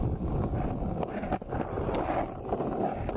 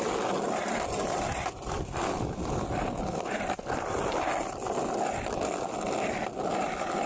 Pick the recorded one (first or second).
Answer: first